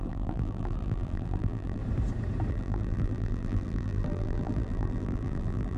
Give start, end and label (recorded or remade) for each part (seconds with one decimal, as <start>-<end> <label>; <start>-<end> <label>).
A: 0.0-1.8 remade; 1.8-2.5 recorded; 2.5-5.8 remade